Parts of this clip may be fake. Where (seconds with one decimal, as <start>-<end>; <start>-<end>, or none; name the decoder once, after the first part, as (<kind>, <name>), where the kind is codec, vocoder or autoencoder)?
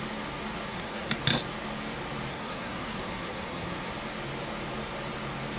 0.7-1.2 (codec, SNAC); 2.3-3.9